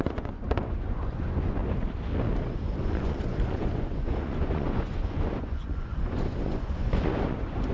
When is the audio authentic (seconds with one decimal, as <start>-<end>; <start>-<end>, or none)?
1.6-2.4